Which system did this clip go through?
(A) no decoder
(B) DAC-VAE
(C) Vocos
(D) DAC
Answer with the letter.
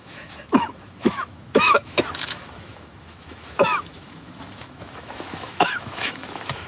B